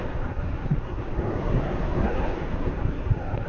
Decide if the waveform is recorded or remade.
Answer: remade